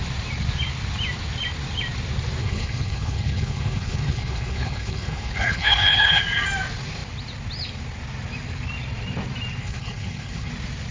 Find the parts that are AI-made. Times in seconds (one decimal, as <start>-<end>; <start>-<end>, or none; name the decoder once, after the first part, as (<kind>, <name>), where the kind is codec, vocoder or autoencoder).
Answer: 2.4-6.2 (codec, HILCodec); 9.6-10.5